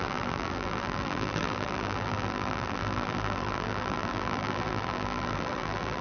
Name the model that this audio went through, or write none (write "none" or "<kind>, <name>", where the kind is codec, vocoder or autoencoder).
vocoder, BigVGAN v2